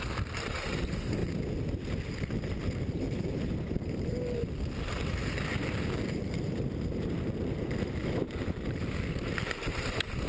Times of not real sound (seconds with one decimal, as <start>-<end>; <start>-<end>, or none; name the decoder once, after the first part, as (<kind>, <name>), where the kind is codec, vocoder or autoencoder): 0.0-1.2 (vocoder, BigVGAN v2); 2.7-4.4; 4.9-8.0; 9.1-10.3